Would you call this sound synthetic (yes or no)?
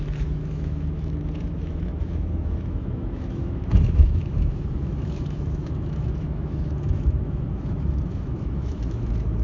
yes